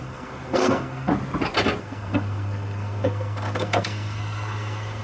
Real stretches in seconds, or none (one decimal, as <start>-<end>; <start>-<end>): 1.1-1.8